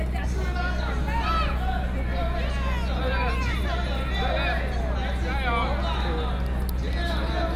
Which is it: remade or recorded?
recorded